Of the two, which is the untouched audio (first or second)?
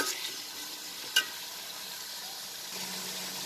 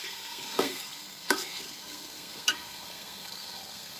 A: first